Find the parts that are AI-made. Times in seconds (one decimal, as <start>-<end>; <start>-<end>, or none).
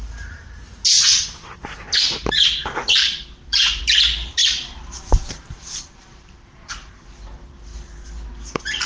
3.0-3.8; 4.4-7.1